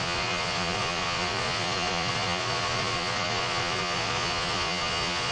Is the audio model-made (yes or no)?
yes